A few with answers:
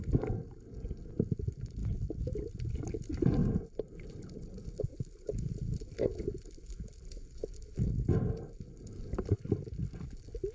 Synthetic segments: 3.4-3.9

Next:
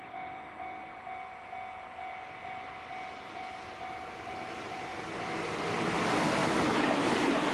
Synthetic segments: 0.0-0.8; 4.5-6.4; 7.1-7.5

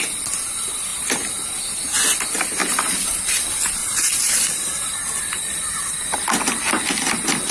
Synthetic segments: 2.6-3.2; 3.8-5.9

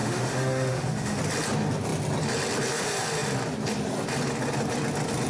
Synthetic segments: 0.0-1.2

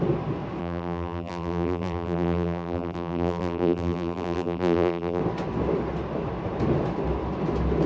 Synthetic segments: 0.6-5.2